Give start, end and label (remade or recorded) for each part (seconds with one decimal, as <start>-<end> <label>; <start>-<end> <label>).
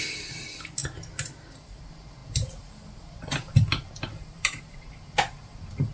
0.0-5.9 recorded